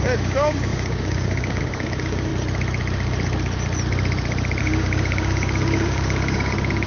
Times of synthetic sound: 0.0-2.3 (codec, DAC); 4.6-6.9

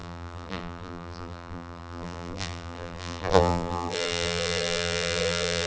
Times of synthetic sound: 0.0-5.7 (vocoder, BigVGAN v2)